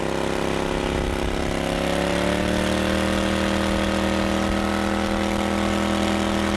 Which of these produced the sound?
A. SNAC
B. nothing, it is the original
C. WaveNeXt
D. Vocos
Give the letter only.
B